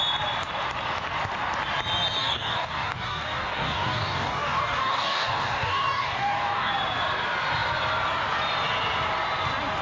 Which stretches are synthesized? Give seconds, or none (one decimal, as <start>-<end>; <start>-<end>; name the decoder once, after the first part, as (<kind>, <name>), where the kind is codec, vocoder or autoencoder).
2.2-6.7 (codec, DAC)